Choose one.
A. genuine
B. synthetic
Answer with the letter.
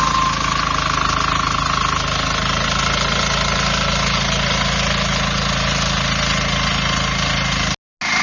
A